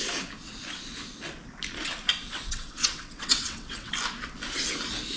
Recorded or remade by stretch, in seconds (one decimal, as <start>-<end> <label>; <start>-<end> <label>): 0.0-2.1 recorded; 2.1-3.9 remade; 3.9-5.2 recorded